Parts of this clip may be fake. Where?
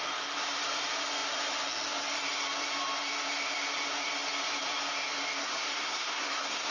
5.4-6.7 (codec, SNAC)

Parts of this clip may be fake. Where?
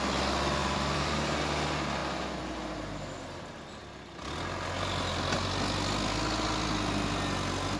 0.6-1.4 (vocoder, BigVGAN v2)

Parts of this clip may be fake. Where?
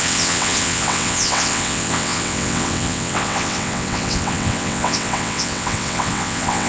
0.0-6.7 (vocoder, WaveNeXt)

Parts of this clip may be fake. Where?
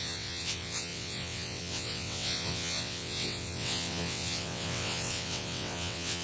0.0-6.2 (vocoder, WaveNeXt)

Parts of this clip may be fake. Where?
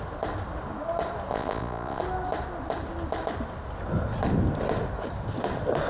1.3-2.0 (vocoder, Vocos)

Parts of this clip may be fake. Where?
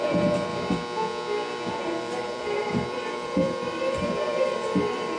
0.0-0.5 (vocoder, BigVGAN v2); 1.7-5.2